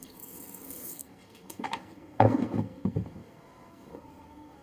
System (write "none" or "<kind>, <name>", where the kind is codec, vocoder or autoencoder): codec, SNAC